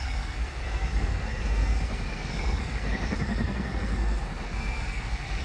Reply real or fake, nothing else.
fake